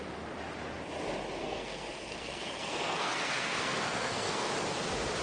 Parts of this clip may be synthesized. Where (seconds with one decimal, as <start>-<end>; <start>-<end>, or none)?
1.4-4.5